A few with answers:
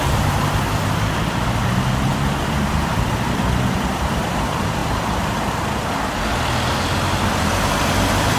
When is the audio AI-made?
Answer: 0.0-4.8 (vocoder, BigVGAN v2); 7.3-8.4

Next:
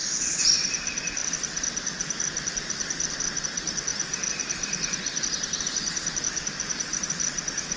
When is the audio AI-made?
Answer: none